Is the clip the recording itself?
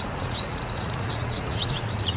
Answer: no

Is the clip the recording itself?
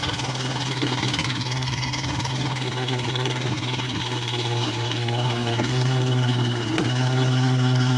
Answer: no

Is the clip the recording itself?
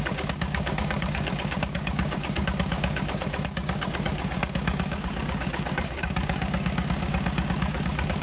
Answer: no